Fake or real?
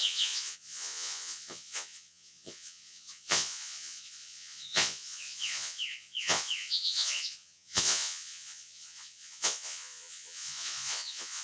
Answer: fake